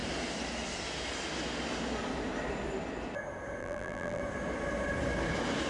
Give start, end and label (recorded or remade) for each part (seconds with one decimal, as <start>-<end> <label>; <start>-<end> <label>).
0.0-3.6 recorded; 3.6-4.2 remade; 4.2-5.7 recorded